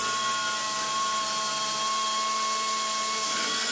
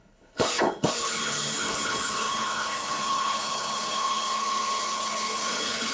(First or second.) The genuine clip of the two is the first